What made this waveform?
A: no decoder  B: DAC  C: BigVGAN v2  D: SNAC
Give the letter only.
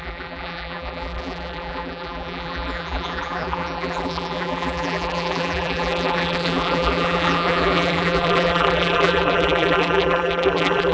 C